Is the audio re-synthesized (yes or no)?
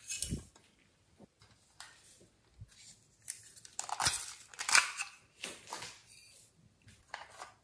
no